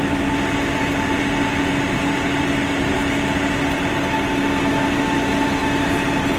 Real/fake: real